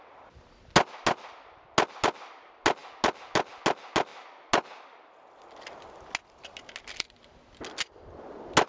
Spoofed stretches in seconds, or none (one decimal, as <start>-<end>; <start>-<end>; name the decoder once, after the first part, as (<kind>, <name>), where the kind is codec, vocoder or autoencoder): none